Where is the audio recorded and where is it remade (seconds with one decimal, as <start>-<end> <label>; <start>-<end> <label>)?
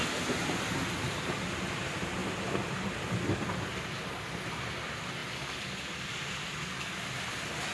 0.0-7.7 recorded